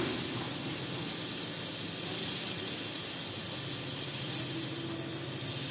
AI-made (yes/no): no